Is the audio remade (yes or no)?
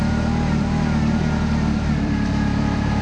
yes